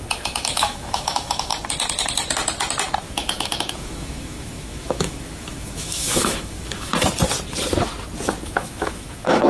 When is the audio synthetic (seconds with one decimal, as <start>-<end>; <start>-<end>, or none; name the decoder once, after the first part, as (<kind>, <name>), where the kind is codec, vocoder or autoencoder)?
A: 0.0-1.5 (autoencoder, DAC-VAE); 3.0-6.9; 8.4-9.5